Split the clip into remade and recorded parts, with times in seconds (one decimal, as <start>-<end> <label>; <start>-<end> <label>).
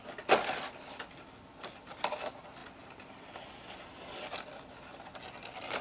0.0-5.8 recorded